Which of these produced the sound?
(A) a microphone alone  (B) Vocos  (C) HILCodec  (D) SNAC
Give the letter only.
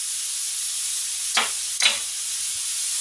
A